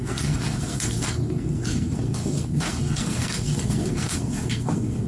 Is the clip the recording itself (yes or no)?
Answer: no